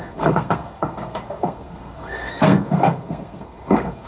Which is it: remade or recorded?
remade